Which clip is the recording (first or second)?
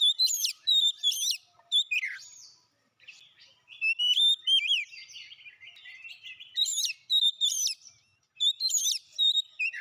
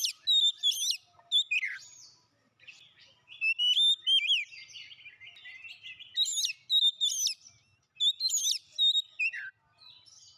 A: second